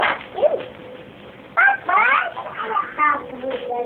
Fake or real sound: real